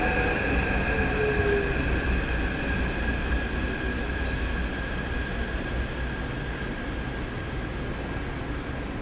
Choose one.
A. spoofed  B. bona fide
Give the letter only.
B